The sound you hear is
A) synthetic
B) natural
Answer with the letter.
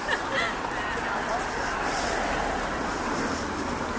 A